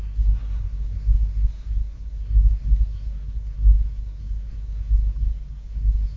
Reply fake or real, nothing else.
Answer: fake